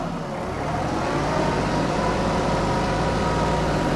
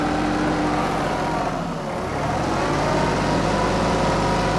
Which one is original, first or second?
second